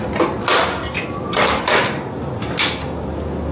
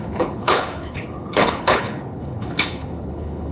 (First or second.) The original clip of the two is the first